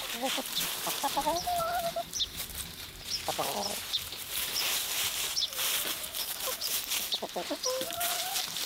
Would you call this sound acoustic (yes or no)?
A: no